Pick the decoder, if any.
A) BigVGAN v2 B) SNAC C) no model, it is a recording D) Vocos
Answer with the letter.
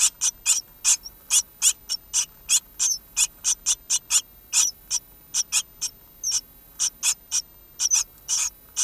C